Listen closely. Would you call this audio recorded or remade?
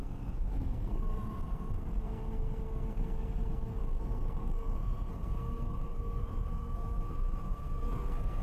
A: remade